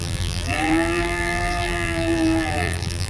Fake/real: fake